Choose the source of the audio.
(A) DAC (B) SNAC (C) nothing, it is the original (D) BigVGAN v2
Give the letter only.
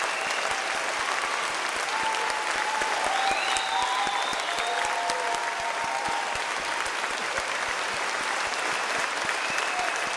C